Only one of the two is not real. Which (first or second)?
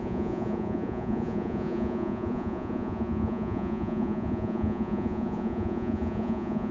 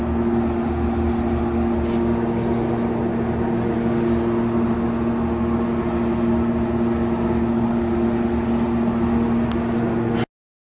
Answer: first